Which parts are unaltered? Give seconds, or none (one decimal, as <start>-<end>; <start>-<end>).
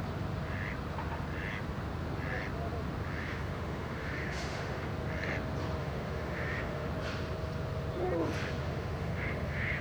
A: 0.0-3.2; 4.9-5.8; 6.9-8.6